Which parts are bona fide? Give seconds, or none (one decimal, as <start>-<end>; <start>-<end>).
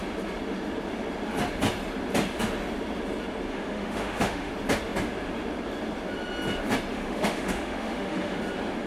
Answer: 0.0-3.5; 4.5-6.9; 8.4-8.9